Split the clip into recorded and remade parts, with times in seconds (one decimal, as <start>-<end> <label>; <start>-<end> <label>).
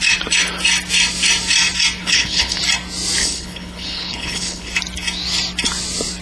0.0-2.0 recorded; 2.0-2.6 remade; 2.6-3.2 recorded; 3.2-4.7 remade; 4.7-6.2 recorded